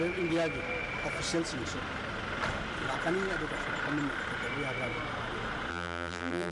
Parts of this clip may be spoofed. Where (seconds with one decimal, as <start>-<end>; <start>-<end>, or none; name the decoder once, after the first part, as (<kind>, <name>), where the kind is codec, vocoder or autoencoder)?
5.7-6.5 (vocoder, BigVGAN v2)